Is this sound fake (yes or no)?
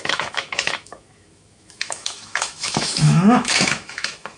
yes